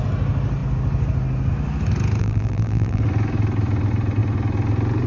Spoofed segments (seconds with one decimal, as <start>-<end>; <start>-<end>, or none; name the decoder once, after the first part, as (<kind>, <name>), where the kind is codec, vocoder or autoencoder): 2.2-3.0 (vocoder, BigVGAN v2)